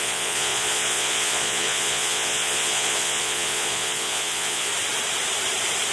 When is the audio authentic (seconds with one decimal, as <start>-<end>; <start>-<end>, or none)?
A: 4.7-5.9